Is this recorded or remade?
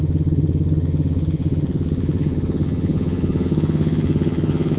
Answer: remade